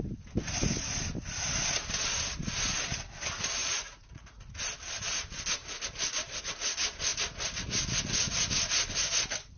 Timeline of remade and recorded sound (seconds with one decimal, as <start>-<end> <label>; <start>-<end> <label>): 0.0-3.6 recorded; 3.6-4.6 remade; 4.6-9.6 recorded